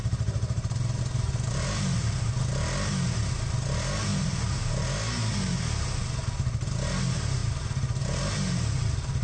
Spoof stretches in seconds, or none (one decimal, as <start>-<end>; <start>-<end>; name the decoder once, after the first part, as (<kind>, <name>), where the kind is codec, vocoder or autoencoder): 0.0-1.0 (vocoder, BigVGAN v2); 4.1-4.7